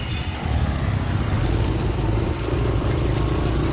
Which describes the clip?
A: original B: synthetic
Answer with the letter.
A